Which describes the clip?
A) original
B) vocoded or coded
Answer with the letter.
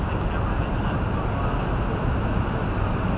A